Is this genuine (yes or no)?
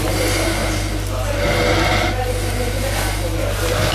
yes